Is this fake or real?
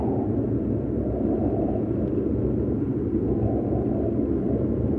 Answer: real